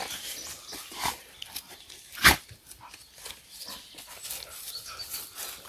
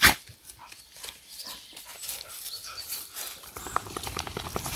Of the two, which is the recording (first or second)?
first